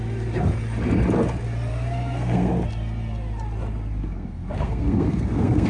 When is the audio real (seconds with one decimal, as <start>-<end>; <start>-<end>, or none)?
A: 0.0-1.7; 2.5-4.0